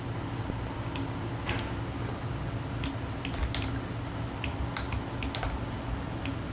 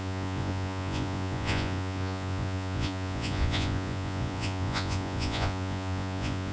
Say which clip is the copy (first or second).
second